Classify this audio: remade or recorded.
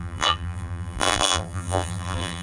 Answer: remade